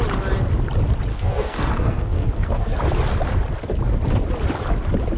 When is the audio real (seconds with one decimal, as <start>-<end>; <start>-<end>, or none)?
0.0-1.1; 2.7-5.2